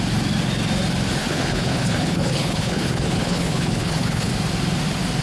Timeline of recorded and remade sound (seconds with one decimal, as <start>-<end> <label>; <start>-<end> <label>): 0.0-1.2 recorded; 1.2-4.3 remade; 4.3-5.2 recorded